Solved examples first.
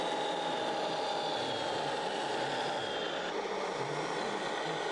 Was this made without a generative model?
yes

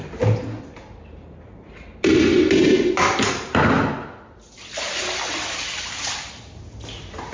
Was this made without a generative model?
yes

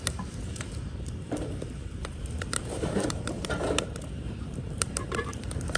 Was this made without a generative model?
no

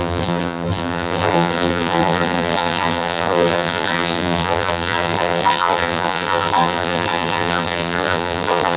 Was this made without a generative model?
no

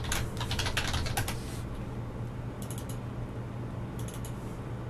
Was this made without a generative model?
yes